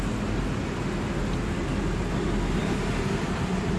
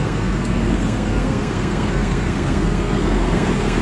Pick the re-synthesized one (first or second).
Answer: second